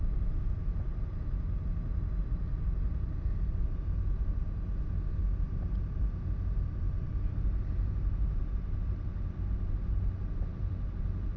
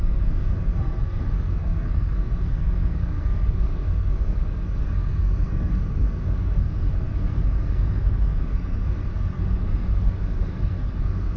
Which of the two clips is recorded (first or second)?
first